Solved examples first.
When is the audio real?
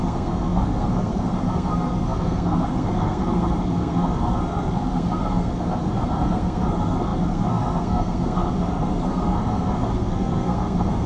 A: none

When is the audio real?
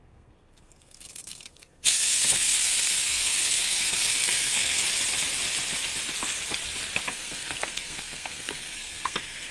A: 4.8-7.1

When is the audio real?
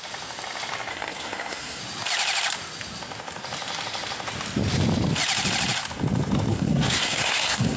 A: 0.0-0.9; 1.8-6.5